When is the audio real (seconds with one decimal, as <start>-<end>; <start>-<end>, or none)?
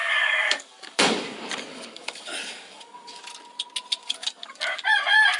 3.2-4.0; 4.6-5.4